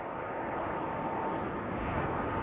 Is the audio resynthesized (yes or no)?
no